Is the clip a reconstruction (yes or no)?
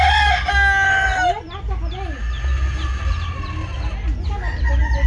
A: no